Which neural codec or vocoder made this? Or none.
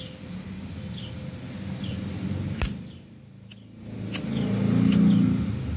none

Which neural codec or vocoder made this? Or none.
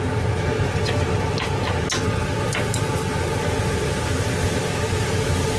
none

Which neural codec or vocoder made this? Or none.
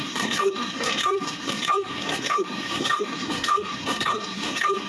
codec, SNAC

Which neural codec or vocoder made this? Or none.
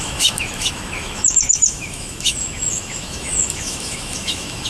autoencoder, DAC-VAE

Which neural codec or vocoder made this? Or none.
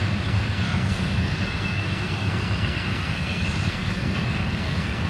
codec, SNAC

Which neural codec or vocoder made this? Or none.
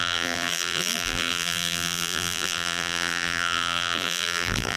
vocoder, BigVGAN v2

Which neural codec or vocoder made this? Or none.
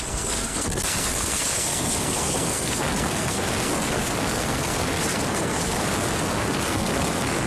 codec, SNAC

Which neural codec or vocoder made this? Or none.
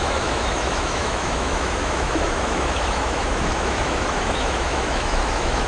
autoencoder, DAC-VAE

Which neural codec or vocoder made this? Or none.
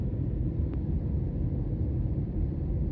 none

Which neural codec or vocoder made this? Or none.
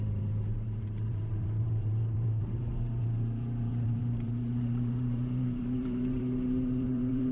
vocoder, BigVGAN v2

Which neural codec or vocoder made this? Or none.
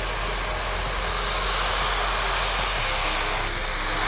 none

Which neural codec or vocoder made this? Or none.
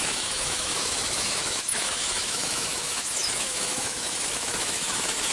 autoencoder, DAC-VAE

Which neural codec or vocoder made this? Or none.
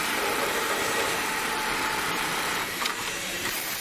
vocoder, BigVGAN v2